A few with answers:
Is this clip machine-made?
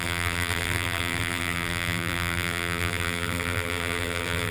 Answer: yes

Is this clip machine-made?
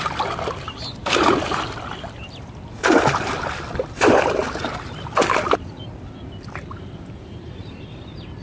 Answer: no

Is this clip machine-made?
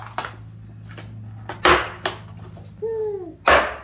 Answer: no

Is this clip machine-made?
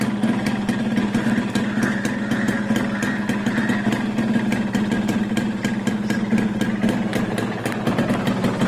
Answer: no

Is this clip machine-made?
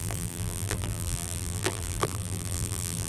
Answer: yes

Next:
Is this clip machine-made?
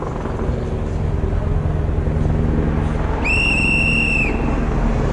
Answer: no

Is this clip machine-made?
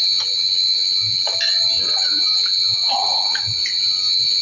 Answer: no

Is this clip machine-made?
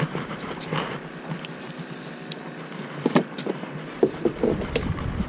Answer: yes